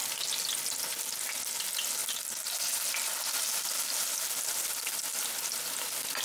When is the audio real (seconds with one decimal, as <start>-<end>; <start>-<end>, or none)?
0.0-6.2